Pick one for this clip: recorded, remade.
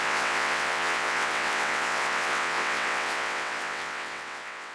remade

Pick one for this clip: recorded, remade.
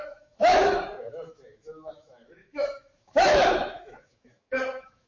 remade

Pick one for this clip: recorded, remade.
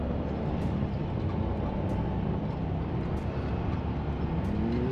recorded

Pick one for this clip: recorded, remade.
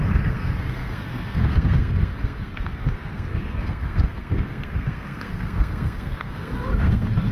remade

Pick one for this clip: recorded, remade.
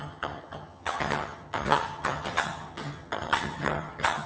remade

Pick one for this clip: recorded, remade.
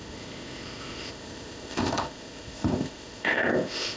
remade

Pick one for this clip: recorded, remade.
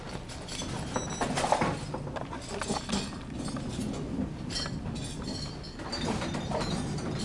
recorded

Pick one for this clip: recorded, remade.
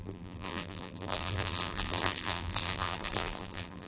remade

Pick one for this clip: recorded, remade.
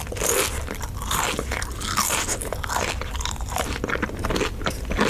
recorded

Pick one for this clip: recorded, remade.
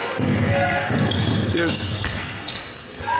remade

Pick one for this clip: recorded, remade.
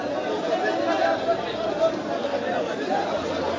recorded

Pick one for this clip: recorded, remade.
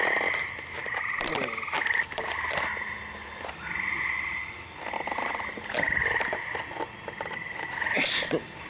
recorded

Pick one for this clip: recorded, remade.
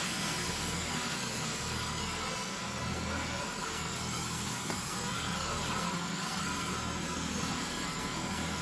remade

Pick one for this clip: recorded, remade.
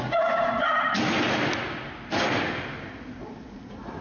recorded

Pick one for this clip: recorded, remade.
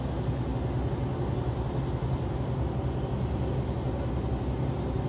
recorded